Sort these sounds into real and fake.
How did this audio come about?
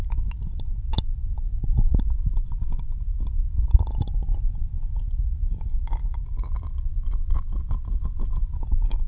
real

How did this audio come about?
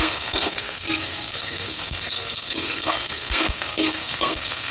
fake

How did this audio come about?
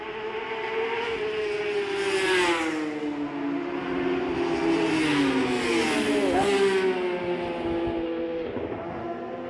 real